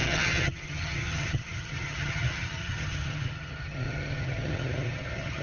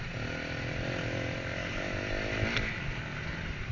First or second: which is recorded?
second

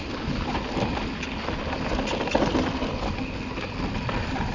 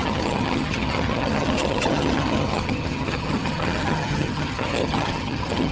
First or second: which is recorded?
first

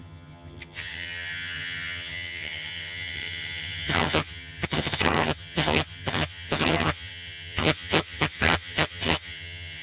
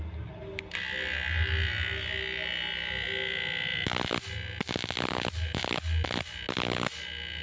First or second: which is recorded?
second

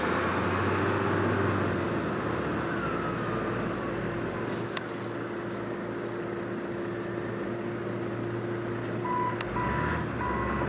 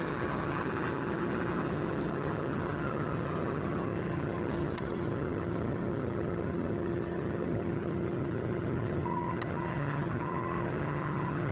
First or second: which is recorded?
first